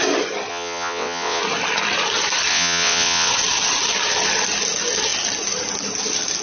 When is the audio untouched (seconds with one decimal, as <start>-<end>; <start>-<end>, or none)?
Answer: 0.0-0.5; 1.4-2.5; 3.3-6.4